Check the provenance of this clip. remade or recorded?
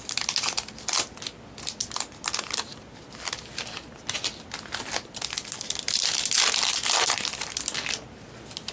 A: recorded